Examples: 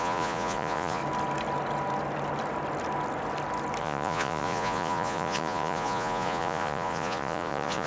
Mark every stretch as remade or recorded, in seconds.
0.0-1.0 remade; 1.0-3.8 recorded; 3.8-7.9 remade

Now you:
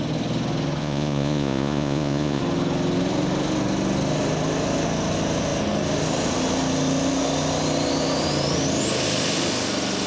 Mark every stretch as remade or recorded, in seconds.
0.0-0.8 recorded; 0.8-2.4 remade; 2.4-10.1 recorded

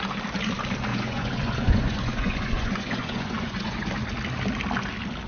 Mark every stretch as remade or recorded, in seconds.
0.0-0.9 recorded; 0.9-3.9 remade; 3.9-5.3 recorded

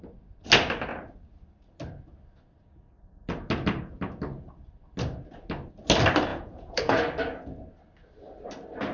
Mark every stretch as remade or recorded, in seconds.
0.0-6.3 recorded; 6.3-7.0 remade; 7.0-8.9 recorded

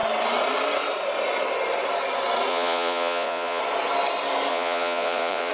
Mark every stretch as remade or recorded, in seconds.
0.0-2.5 recorded; 2.5-3.6 remade; 3.6-4.5 recorded; 4.5-5.5 remade